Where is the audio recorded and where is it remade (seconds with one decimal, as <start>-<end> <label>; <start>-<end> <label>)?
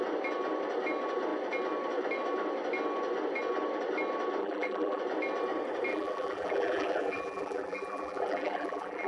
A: 0.0-4.4 recorded; 4.4-5.0 remade; 5.0-5.9 recorded; 5.9-9.1 remade